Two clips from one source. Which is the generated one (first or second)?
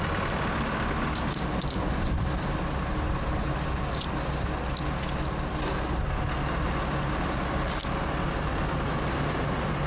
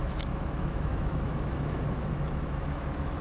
second